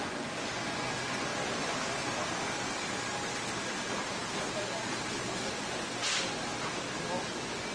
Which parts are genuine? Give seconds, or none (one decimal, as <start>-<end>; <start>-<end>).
1.3-5.5; 6.0-7.2